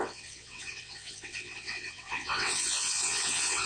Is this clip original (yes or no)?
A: no